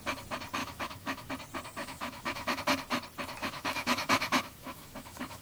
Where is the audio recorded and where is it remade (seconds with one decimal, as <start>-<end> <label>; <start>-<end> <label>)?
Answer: 0.0-0.6 recorded; 0.6-1.3 remade; 1.3-1.8 recorded; 1.8-2.6 remade; 2.6-3.4 recorded; 3.4-5.4 remade